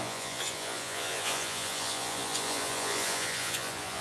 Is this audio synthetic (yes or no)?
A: yes